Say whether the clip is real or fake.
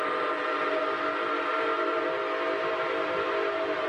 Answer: real